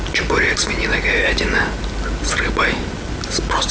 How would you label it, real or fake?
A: real